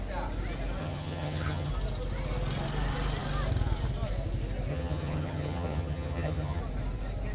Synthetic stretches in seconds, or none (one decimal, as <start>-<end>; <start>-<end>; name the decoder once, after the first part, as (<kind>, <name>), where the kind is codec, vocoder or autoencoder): 0.8-1.7 (vocoder, HiFi-GAN); 4.7-6.6